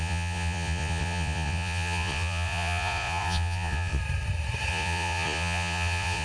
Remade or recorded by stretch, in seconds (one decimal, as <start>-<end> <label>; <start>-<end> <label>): 0.0-4.0 remade; 4.0-4.7 recorded; 4.7-6.2 remade